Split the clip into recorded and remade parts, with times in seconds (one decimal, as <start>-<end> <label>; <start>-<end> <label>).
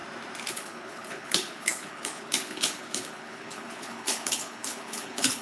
0.0-0.5 recorded; 0.5-5.4 remade